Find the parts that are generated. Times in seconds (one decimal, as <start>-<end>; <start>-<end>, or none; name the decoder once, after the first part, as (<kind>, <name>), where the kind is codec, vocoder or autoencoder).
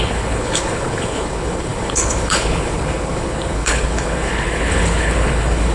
0.0-5.7 (codec, HILCodec)